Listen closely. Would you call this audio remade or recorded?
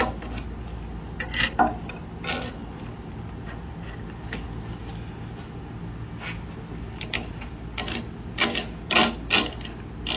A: recorded